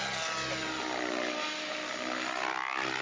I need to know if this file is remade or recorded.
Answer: recorded